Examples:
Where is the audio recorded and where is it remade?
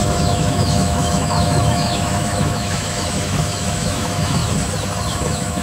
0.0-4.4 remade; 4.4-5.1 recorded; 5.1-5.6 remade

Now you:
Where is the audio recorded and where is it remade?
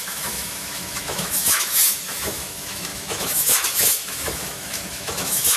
0.0-5.6 remade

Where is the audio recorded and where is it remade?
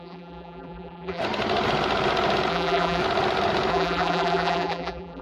0.0-1.2 remade; 1.2-2.5 recorded; 2.5-3.0 remade; 3.0-3.7 recorded; 3.7-5.2 remade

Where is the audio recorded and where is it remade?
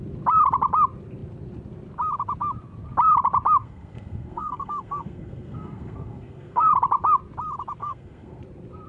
0.0-3.6 recorded; 3.6-6.7 remade; 6.7-7.8 recorded; 7.8-8.4 remade; 8.4-8.9 recorded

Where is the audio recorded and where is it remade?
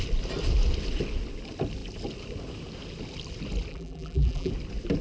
0.0-3.7 recorded; 3.7-4.5 remade; 4.5-5.0 recorded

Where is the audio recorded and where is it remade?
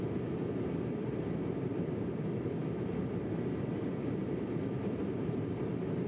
0.0-1.7 recorded; 1.7-2.2 remade; 2.2-5.0 recorded; 5.0-6.1 remade